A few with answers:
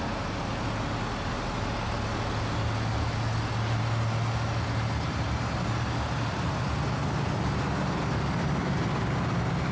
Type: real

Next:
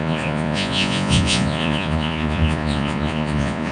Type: fake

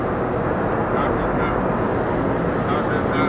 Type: real